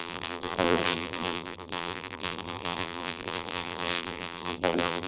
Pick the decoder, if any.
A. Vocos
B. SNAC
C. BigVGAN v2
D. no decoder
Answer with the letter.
C